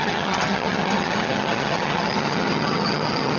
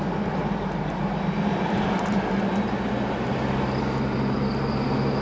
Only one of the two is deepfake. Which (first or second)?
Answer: first